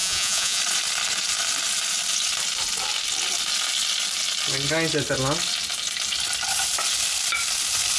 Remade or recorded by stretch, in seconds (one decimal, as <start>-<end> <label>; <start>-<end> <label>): 0.0-0.6 remade; 0.6-8.0 recorded